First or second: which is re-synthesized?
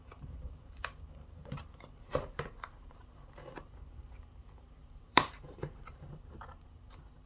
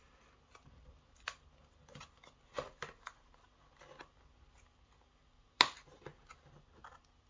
first